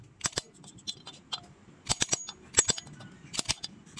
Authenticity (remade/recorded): recorded